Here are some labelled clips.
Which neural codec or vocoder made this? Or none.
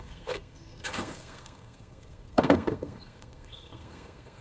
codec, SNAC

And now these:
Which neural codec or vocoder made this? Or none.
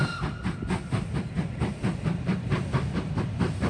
none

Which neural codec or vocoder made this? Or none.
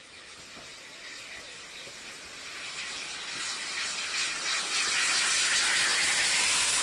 none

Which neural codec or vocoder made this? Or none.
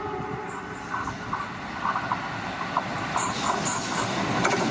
none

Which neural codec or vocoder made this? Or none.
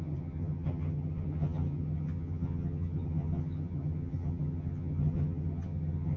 vocoder, HiFi-GAN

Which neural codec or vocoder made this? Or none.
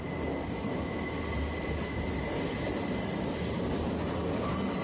none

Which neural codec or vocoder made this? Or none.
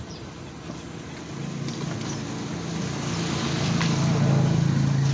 none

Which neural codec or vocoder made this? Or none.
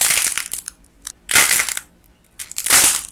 none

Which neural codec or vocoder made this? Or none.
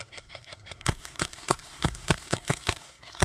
codec, SNAC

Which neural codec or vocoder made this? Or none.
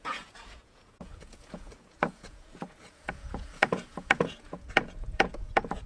vocoder, Vocos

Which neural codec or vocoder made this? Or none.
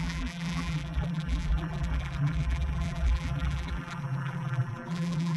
vocoder, BigVGAN v2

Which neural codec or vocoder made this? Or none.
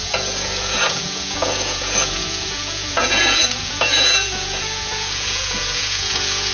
vocoder, Vocos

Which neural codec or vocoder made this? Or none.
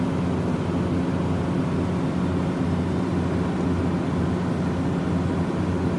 none